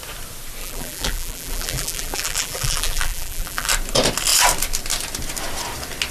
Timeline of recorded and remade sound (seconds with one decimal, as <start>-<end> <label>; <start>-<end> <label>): 0.0-0.6 recorded; 0.6-3.7 remade; 3.7-6.1 recorded